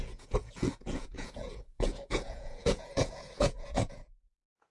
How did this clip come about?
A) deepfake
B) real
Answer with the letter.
A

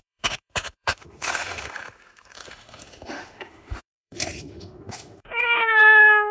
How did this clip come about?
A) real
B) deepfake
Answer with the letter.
B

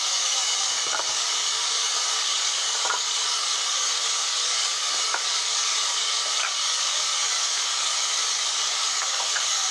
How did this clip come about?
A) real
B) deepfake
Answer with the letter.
B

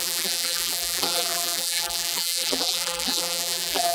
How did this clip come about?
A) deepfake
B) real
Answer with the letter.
A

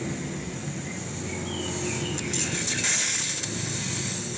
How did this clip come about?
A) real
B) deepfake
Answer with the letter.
A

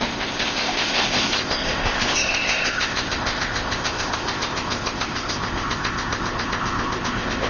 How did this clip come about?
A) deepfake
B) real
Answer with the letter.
A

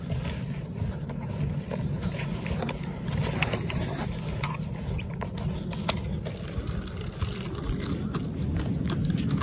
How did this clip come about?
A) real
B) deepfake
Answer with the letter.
A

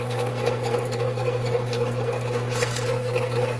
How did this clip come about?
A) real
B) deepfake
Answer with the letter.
B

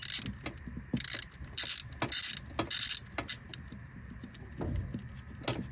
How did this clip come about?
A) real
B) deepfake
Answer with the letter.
A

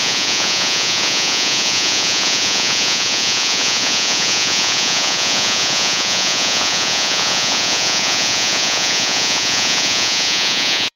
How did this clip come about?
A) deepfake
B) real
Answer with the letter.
A